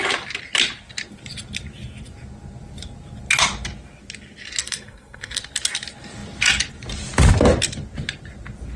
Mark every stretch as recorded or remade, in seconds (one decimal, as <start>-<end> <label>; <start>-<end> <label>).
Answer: 0.0-4.6 recorded; 4.6-5.4 remade; 5.4-8.8 recorded